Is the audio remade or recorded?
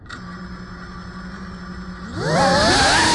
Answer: recorded